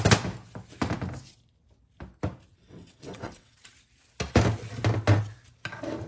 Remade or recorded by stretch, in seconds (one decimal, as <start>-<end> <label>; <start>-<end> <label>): 0.0-2.6 recorded; 2.6-3.6 remade; 3.6-6.1 recorded